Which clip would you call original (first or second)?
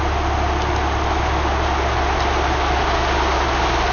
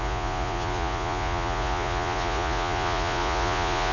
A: first